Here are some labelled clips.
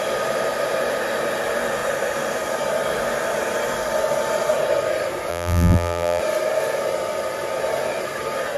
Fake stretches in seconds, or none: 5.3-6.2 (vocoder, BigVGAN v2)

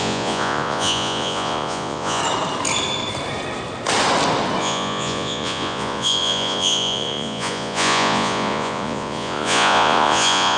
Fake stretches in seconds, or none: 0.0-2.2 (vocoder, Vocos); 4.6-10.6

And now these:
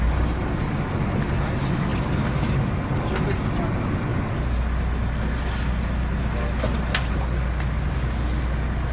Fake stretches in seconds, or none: none